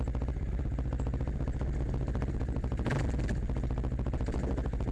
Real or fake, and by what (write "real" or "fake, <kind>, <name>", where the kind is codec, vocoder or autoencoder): real